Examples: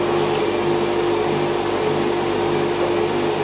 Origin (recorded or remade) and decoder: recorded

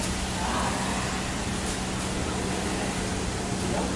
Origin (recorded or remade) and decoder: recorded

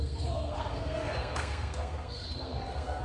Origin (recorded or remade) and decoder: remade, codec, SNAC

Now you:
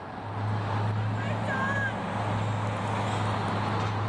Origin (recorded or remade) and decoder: recorded